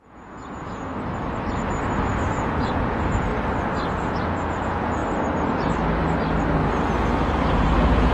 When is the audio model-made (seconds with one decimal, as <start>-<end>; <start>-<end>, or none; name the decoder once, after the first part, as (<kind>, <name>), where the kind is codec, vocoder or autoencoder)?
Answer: 0.0-0.9 (vocoder, Vocos); 2.2-3.3; 3.9-5.0; 7.5-8.1